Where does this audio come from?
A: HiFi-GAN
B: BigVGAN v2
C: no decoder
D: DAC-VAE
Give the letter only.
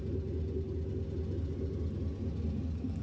C